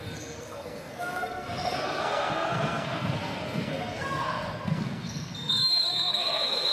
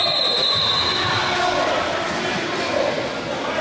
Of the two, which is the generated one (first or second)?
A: first